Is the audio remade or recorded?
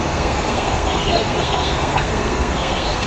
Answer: remade